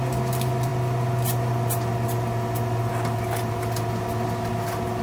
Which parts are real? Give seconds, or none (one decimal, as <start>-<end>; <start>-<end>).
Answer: 0.0-5.0